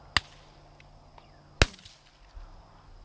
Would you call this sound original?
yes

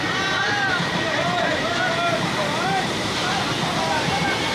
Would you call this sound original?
yes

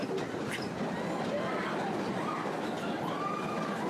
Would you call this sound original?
yes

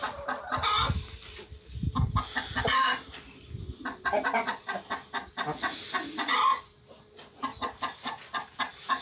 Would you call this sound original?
yes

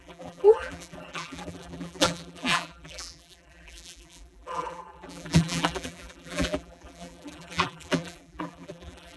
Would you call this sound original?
no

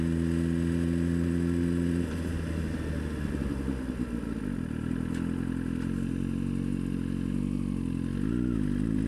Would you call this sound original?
yes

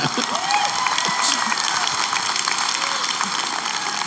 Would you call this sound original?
no